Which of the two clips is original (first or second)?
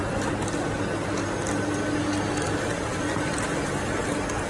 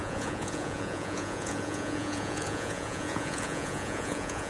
first